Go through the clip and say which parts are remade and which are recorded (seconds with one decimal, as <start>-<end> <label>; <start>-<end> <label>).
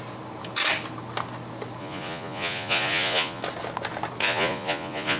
0.0-1.8 recorded; 1.8-3.4 remade; 3.4-4.2 recorded; 4.2-5.2 remade